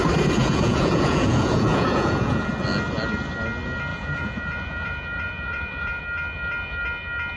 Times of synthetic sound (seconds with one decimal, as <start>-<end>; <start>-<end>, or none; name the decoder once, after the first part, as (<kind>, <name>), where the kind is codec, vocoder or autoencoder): 0.4-2.5 (vocoder, Vocos); 3.9-6.0